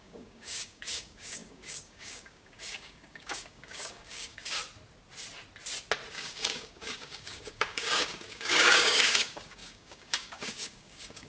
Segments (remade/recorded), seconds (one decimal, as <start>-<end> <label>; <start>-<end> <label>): 0.0-4.6 remade; 4.6-6.1 recorded; 6.1-11.3 remade